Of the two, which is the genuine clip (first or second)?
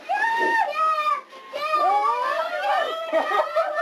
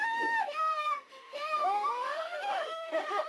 first